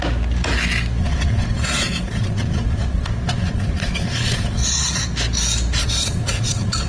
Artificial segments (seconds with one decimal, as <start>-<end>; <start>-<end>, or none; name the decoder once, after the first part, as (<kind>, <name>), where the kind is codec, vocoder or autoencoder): 1.0-5.0 (vocoder, Vocos); 5.8-6.9